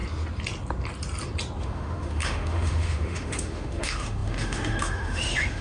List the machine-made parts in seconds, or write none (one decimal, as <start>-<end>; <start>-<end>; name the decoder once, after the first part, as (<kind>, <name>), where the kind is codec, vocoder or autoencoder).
1.6-5.6 (autoencoder, DAC-VAE)